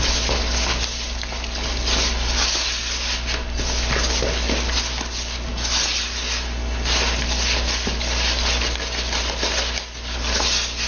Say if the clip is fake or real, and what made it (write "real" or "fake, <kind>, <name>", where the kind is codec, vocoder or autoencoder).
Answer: real